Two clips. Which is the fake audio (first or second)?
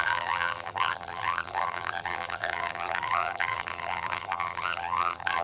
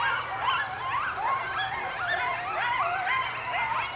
first